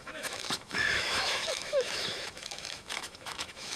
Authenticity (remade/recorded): remade